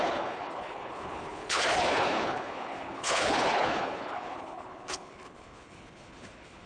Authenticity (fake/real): fake